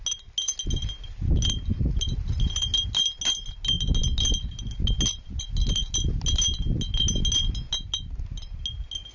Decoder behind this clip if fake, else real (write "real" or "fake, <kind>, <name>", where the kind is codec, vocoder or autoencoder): real